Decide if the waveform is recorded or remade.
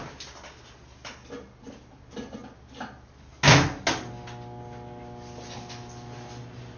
recorded